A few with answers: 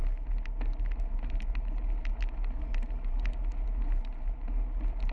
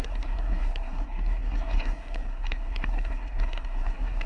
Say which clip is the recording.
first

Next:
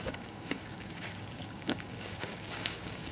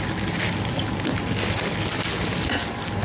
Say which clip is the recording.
second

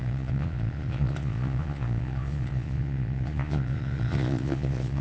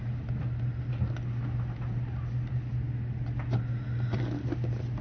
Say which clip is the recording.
second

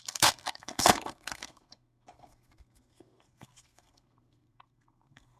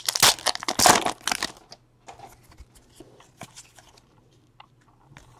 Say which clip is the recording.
second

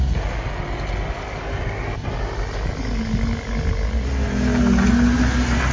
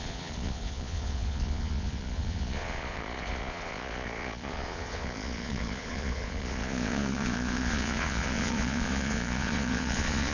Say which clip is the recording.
first